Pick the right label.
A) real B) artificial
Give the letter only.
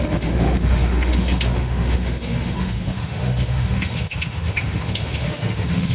B